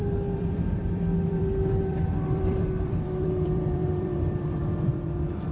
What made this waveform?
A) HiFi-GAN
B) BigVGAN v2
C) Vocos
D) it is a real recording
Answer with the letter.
B